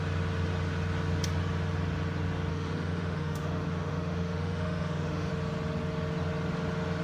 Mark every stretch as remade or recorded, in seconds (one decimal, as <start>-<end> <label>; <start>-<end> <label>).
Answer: 0.0-2.5 recorded; 2.5-5.3 remade; 5.3-7.0 recorded